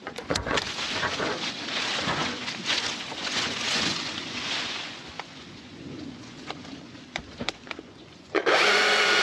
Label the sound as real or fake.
fake